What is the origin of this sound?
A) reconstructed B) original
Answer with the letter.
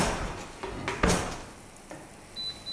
B